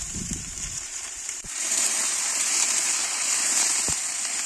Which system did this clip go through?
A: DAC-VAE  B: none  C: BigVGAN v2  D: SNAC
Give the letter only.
C